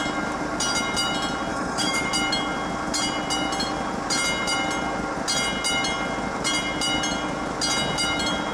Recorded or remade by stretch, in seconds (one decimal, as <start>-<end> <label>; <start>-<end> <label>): 0.0-1.5 recorded; 1.5-2.1 remade; 2.1-8.5 recorded